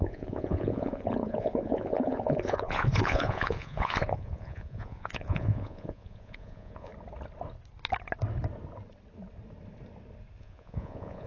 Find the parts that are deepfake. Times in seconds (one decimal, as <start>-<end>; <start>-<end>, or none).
0.0-6.9; 10.4-11.3